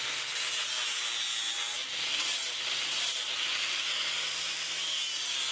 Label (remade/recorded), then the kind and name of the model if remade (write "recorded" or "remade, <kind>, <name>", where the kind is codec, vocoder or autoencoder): recorded